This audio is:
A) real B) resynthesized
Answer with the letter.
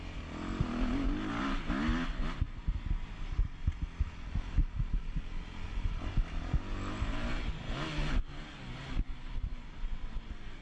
A